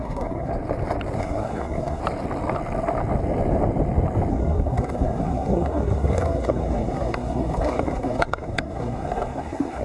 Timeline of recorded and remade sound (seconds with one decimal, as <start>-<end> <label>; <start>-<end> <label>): 0.0-0.5 remade; 0.5-1.2 recorded; 1.2-2.0 remade; 2.0-4.3 recorded; 4.3-9.8 remade